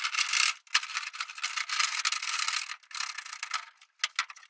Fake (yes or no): no